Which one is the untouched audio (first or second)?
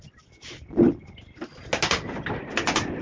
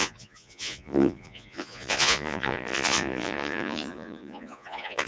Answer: first